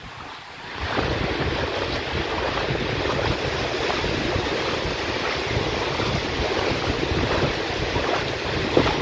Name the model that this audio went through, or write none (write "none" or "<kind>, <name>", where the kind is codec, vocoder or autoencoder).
none